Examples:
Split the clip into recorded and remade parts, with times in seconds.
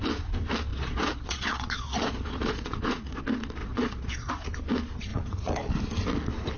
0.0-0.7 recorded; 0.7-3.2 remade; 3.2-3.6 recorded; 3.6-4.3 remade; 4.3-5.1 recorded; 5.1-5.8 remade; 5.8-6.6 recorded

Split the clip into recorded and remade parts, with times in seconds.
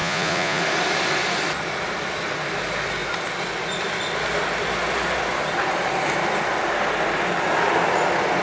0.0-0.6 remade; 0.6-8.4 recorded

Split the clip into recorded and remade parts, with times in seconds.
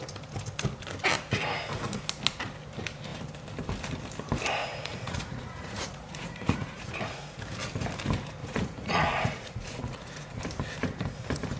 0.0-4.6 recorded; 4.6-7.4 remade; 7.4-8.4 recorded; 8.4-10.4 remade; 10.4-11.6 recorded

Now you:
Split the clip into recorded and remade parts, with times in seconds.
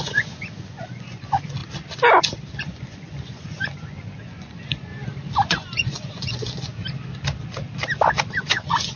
0.0-1.6 remade; 1.6-2.6 recorded; 2.6-4.9 remade; 4.9-5.5 recorded; 5.5-6.8 remade; 6.8-8.4 recorded; 8.4-9.0 remade